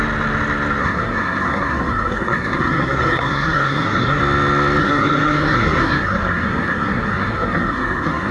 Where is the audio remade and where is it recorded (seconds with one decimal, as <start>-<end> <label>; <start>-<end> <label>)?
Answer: 0.0-0.8 recorded; 0.8-4.2 remade; 4.2-4.8 recorded; 4.8-8.3 remade